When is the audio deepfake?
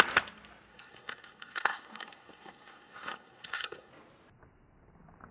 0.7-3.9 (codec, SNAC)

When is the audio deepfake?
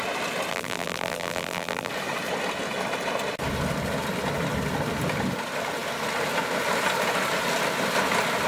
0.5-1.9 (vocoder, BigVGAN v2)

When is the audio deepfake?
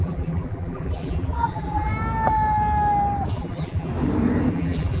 0.0-1.9 (vocoder, BigVGAN v2); 3.3-3.9; 4.5-5.0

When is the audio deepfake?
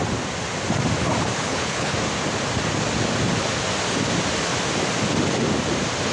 1.4-1.9 (codec, HILCodec)